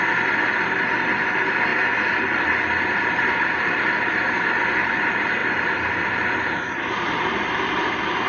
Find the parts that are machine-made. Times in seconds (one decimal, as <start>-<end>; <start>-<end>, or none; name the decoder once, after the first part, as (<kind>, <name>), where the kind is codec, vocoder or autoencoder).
none